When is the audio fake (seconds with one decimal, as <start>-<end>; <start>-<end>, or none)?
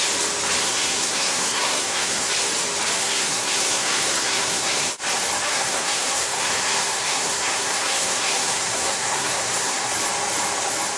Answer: 0.6-2.3; 3.0-4.9; 5.5-9.9